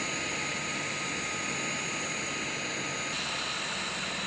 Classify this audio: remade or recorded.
recorded